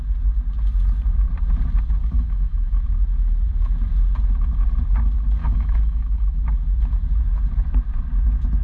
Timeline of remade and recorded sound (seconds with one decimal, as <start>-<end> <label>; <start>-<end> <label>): 0.0-2.0 recorded; 2.0-2.8 remade; 2.8-5.4 recorded; 5.4-6.4 remade; 6.4-8.6 recorded